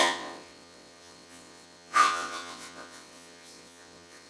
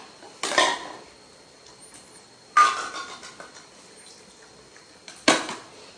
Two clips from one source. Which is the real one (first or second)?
second